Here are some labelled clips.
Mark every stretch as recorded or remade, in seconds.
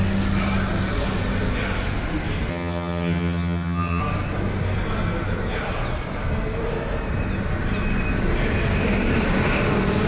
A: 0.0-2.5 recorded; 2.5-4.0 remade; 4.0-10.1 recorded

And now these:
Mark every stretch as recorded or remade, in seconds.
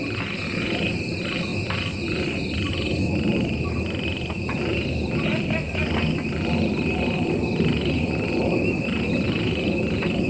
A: 0.0-10.3 recorded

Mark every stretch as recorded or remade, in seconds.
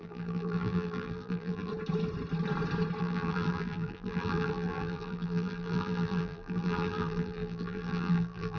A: 0.0-1.7 remade; 1.7-3.0 recorded; 3.0-8.6 remade